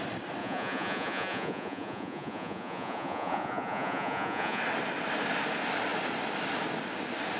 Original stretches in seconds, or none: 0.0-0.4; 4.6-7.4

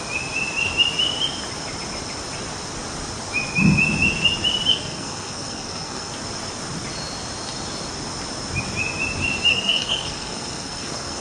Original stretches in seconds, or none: 0.0-4.7; 6.1-9.5

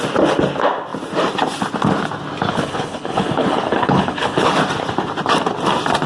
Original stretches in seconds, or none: 0.0-2.5; 4.5-6.1

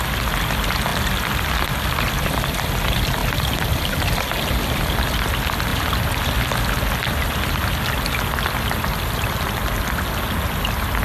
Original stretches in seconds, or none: 0.0-11.0

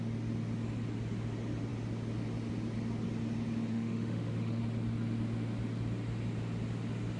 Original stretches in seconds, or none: 0.0-3.7; 4.6-7.2

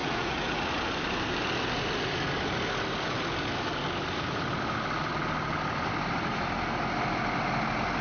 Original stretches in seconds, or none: 0.7-8.0

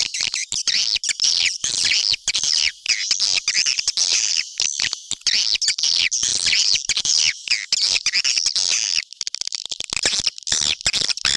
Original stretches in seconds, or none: 0.0-11.4

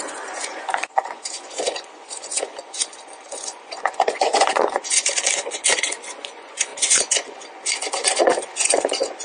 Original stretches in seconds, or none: none